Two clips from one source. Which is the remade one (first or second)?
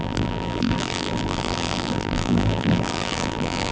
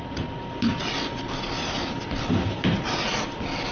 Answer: first